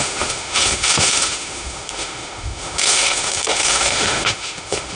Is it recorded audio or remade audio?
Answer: remade